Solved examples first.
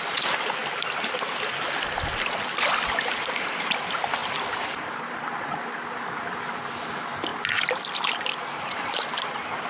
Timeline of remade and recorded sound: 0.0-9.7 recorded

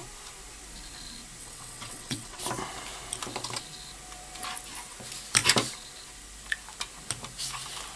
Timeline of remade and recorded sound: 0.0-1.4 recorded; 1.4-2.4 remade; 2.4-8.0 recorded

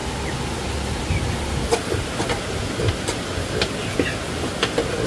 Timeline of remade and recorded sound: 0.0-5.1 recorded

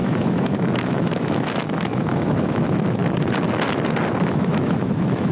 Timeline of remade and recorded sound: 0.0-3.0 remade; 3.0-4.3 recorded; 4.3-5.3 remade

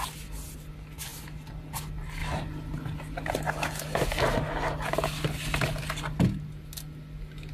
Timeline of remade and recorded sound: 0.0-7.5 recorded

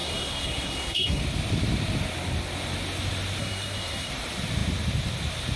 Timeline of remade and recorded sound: 0.0-1.2 remade; 1.2-3.4 recorded; 3.4-4.1 remade; 4.1-5.6 recorded

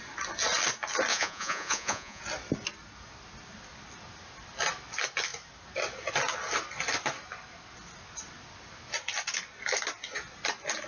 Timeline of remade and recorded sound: 0.0-1.1 recorded; 1.1-2.2 remade; 2.2-10.9 recorded

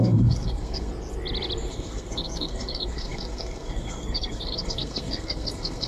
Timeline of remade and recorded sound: 0.0-0.9 remade; 0.9-1.7 recorded; 1.7-5.9 remade